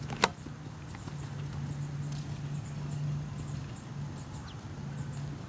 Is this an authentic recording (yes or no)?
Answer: yes